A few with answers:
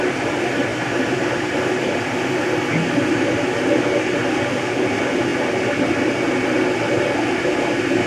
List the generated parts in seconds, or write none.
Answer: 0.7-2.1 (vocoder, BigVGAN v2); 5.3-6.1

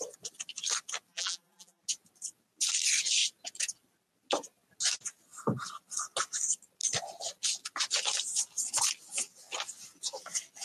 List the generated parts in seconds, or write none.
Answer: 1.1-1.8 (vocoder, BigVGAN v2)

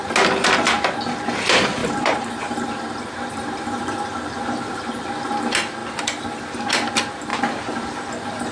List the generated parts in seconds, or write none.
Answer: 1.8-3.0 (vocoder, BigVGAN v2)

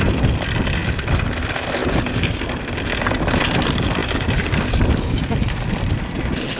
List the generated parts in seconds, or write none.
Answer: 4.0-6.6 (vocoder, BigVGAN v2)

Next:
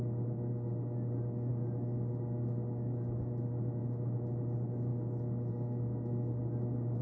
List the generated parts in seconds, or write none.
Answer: none

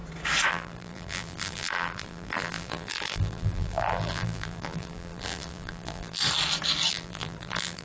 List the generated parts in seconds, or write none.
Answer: 0.5-6.2 (vocoder, BigVGAN v2); 6.9-7.8

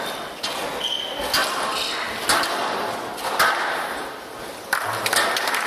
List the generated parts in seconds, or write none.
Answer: none